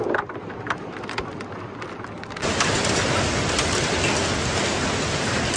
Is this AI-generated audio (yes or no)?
no